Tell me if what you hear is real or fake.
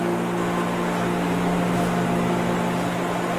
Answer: real